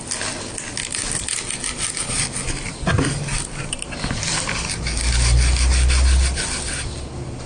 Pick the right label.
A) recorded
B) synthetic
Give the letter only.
A